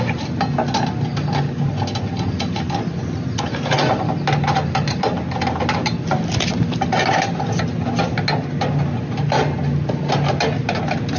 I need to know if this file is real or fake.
real